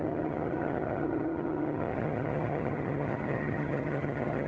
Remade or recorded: remade